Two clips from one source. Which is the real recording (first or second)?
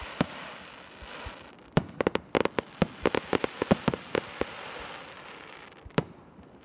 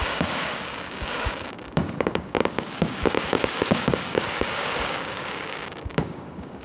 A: first